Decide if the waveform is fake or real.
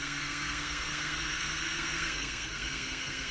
fake